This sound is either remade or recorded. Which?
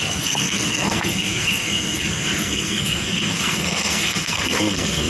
remade